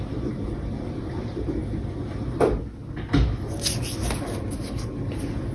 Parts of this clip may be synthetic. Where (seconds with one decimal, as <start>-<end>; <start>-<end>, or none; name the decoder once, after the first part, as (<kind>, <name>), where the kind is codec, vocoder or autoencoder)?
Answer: none